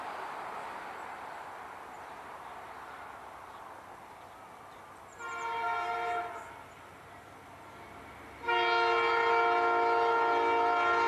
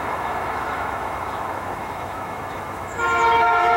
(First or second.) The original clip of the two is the first